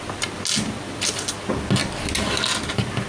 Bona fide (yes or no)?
yes